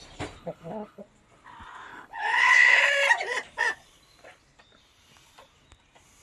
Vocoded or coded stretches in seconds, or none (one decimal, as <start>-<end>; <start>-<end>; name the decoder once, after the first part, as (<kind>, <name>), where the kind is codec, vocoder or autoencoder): 0.4-1.0 (codec, HILCodec); 1.9-2.8